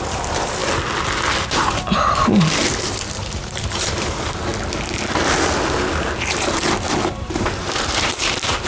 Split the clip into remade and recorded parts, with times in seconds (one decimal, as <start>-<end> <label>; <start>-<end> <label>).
0.0-0.6 remade; 0.6-2.5 recorded; 2.5-4.5 remade; 4.5-7.1 recorded; 7.1-8.7 remade